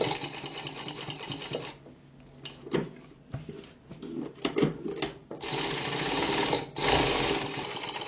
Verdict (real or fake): real